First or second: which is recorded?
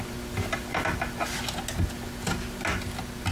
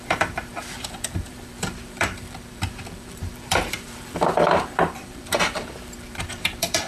first